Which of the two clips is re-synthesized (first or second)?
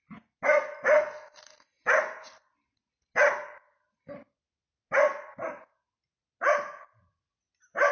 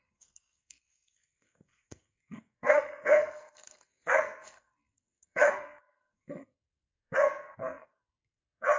second